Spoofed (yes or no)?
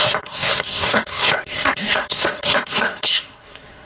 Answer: yes